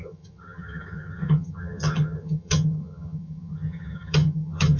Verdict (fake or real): fake